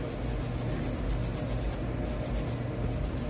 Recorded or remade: recorded